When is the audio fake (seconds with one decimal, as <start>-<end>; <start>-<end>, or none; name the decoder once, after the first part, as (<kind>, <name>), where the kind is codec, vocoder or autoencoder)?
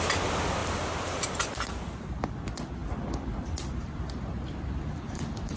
0.6-1.5 (vocoder, BigVGAN v2)